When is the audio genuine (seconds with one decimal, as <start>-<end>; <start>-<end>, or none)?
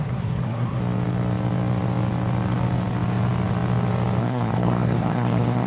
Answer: 0.8-4.2